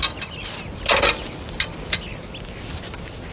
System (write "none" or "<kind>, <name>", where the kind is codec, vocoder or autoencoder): none